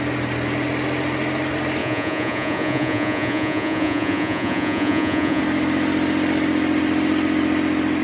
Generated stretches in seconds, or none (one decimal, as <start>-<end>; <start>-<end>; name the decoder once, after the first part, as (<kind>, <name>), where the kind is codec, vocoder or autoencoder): 1.8-5.4 (vocoder, Vocos)